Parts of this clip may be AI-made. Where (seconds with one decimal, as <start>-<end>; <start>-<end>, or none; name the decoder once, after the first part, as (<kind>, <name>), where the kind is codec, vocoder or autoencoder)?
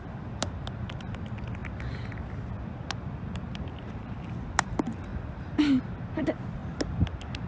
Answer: 0.0-6.6 (vocoder, BigVGAN v2)